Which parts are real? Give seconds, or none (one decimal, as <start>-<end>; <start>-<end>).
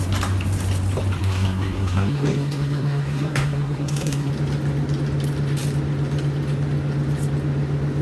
0.0-1.2; 4.3-8.0